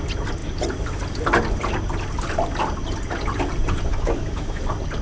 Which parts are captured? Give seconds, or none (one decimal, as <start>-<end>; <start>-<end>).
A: 0.0-3.9; 4.6-5.0